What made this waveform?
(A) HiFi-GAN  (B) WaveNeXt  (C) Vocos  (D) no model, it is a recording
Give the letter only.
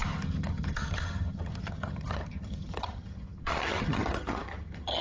A